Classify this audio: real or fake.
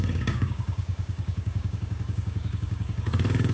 fake